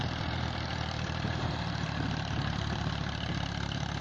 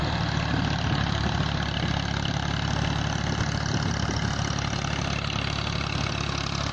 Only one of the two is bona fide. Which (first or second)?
second